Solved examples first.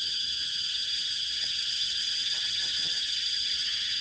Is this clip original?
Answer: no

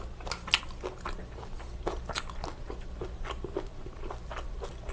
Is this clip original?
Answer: yes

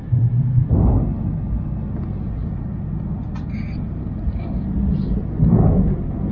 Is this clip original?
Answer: yes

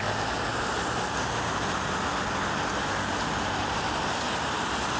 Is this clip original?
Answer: yes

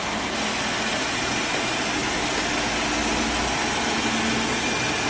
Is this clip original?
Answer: yes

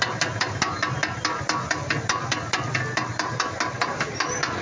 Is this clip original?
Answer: yes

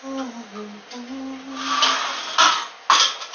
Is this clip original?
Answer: yes